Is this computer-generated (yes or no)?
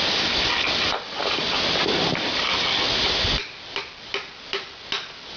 no